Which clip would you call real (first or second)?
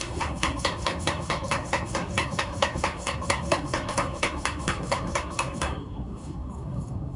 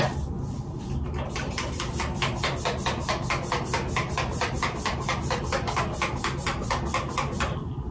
second